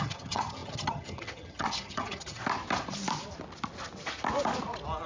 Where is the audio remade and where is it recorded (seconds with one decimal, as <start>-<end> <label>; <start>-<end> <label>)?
0.0-2.4 remade; 2.4-5.1 recorded